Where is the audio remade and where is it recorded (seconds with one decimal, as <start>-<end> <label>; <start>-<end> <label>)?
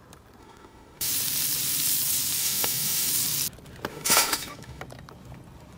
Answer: 0.0-0.4 recorded; 0.4-1.1 remade; 1.1-2.4 recorded; 2.4-3.1 remade; 3.1-3.9 recorded; 3.9-4.8 remade; 4.8-5.8 recorded